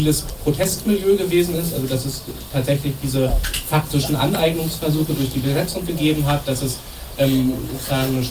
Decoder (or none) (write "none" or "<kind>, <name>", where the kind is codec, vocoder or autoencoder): none